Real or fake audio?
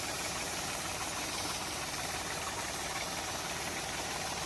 fake